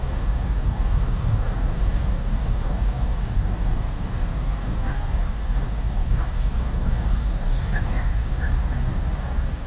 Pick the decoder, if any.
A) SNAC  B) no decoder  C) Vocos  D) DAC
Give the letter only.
D